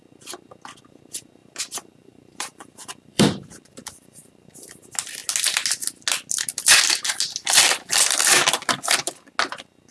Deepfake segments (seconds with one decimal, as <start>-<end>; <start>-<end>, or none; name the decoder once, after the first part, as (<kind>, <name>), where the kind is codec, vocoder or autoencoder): 1.4-4.5 (vocoder, BigVGAN v2)